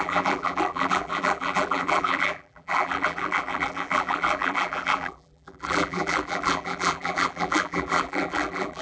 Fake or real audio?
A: fake